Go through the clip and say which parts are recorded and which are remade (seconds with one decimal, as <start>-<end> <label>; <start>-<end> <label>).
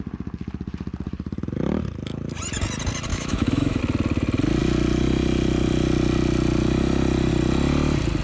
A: 0.0-3.1 recorded; 3.1-3.8 remade; 3.8-8.2 recorded